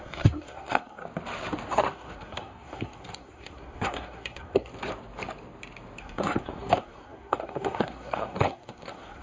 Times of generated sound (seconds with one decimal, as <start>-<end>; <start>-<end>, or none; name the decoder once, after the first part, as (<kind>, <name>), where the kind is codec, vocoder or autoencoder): 0.0-1.0 (codec, SNAC); 1.7-4.7; 6.0-9.2